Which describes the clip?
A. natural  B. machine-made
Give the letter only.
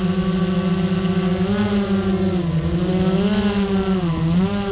A